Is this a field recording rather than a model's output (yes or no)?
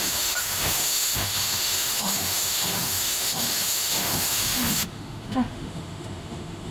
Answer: no